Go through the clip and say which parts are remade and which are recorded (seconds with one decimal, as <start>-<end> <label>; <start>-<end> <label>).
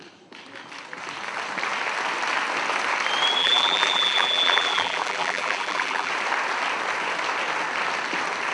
0.0-3.4 recorded; 3.4-6.1 remade; 6.1-8.5 recorded